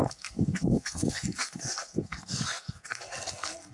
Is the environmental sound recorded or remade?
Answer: remade